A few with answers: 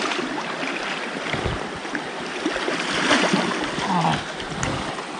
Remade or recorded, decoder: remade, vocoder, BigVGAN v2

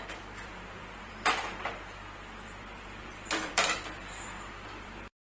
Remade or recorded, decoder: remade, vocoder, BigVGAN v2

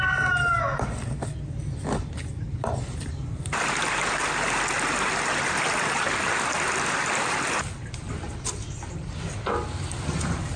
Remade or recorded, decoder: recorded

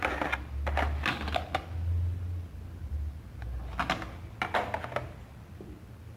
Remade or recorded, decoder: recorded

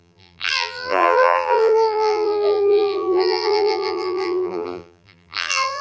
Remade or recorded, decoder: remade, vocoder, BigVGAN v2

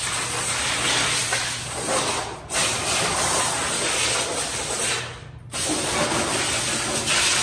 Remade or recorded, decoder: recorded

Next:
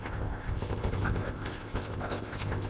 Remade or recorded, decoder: remade, codec, ZipCodec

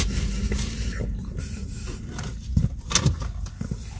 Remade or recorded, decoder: recorded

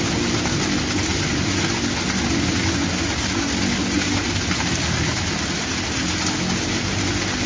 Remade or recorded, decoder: recorded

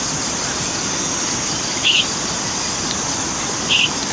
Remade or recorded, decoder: recorded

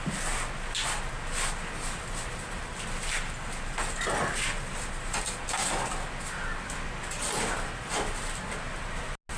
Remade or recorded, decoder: recorded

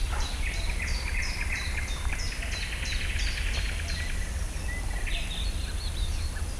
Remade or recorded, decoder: recorded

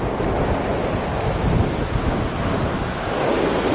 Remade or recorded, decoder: recorded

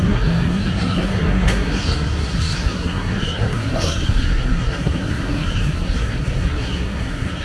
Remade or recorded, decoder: remade, codec, SNAC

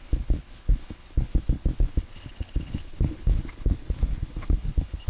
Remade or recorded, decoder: remade, codec, HILCodec